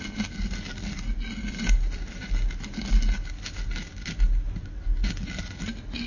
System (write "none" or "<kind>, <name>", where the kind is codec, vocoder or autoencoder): none